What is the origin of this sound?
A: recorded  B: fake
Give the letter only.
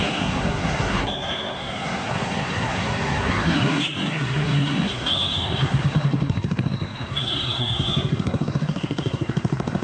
B